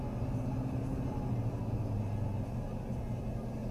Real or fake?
real